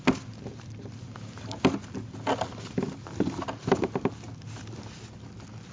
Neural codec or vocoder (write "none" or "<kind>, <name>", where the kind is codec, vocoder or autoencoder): none